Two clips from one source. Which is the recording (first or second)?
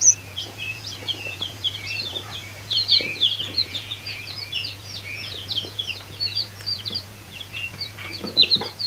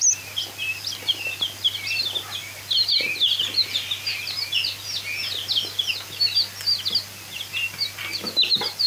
second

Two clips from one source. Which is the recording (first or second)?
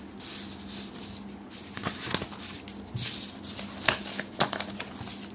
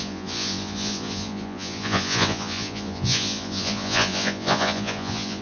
first